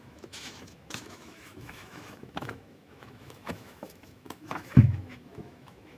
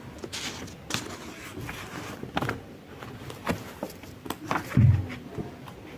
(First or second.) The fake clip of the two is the first